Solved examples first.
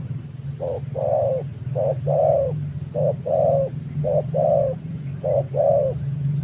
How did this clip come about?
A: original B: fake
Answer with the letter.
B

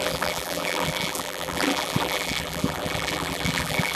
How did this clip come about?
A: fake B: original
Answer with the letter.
A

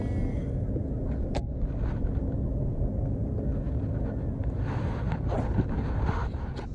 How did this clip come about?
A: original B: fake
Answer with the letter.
A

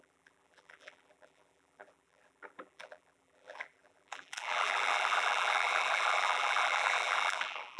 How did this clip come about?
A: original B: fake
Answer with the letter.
B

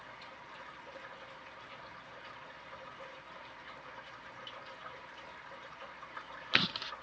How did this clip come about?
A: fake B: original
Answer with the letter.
A